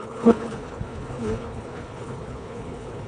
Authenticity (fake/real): fake